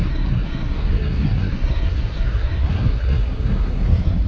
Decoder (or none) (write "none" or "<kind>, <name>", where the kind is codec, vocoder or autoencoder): codec, SNAC